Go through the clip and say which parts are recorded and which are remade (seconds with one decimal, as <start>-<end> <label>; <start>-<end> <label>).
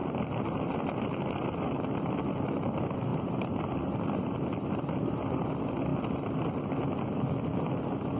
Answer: 0.0-2.2 remade; 2.2-5.9 recorded; 5.9-6.6 remade; 6.6-8.2 recorded